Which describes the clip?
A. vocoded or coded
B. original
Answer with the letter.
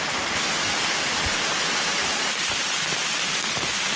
B